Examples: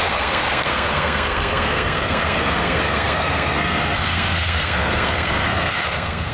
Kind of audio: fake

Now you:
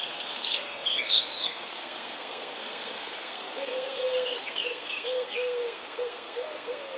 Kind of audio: fake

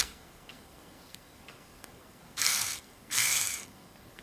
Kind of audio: fake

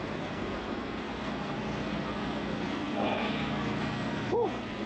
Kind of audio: fake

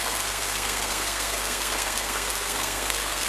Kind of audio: fake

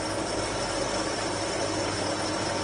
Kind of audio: real